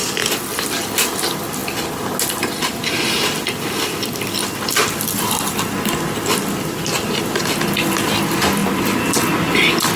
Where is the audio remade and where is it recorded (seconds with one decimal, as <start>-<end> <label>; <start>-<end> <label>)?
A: 0.0-10.0 recorded